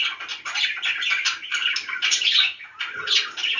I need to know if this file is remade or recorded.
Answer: recorded